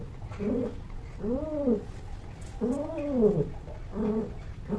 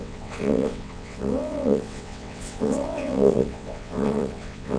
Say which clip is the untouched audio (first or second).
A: first